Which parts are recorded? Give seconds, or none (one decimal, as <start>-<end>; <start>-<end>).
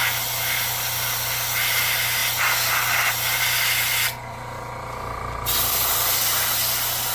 0.0-7.1